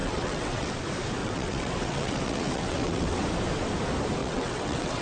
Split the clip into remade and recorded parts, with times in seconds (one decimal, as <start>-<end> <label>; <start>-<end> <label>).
0.0-0.7 remade; 0.7-1.2 recorded; 1.2-3.2 remade; 3.2-4.2 recorded; 4.2-5.0 remade